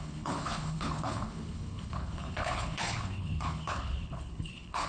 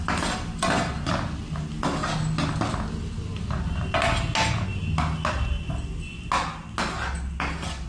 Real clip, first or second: second